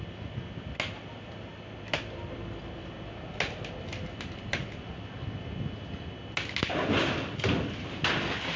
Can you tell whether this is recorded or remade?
recorded